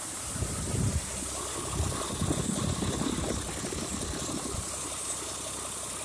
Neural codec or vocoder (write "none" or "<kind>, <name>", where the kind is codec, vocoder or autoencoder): none